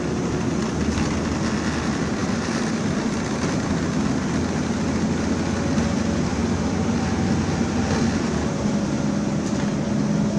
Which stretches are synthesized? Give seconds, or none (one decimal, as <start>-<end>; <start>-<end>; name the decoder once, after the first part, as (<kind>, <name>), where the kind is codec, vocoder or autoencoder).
2.2-2.9 (vocoder, BigVGAN v2); 6.3-7.9